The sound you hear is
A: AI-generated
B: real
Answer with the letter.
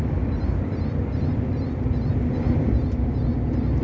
B